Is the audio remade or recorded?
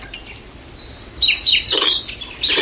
recorded